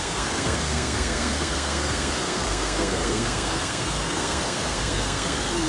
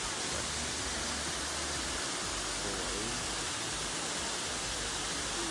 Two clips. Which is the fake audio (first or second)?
first